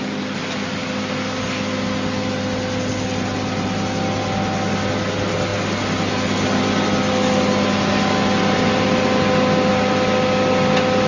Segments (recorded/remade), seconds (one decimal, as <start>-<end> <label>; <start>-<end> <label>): 0.0-11.1 recorded